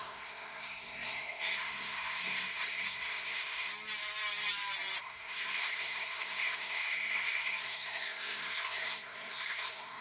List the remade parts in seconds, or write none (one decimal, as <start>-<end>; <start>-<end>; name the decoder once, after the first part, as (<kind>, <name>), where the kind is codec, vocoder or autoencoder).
0.0-3.7 (codec, SNAC); 5.0-10.0